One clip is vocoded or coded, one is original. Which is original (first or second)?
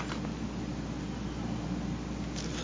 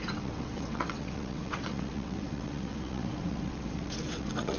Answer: first